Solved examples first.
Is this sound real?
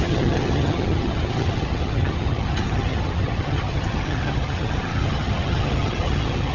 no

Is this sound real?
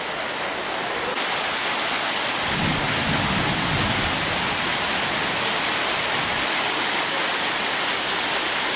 yes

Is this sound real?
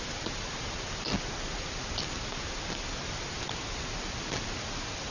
yes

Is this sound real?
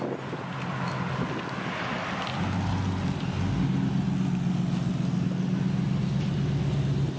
yes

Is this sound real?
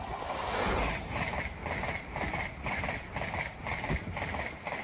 yes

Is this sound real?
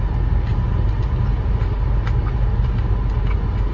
yes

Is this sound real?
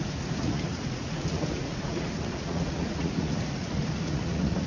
no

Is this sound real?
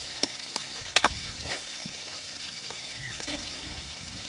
no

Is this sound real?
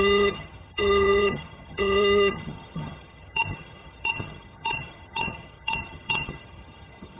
no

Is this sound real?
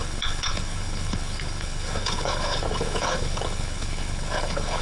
no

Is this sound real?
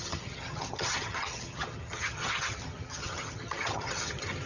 no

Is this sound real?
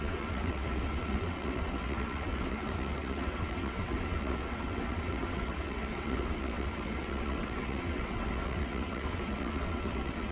no